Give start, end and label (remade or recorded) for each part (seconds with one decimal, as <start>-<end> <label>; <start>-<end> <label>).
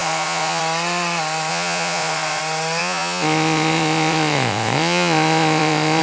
0.0-0.6 remade; 0.6-1.5 recorded; 1.5-2.4 remade; 2.4-2.8 recorded; 2.8-6.0 remade